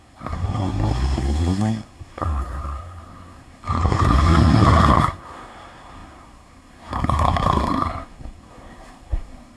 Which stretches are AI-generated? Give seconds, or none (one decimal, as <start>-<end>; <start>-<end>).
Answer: 0.0-9.6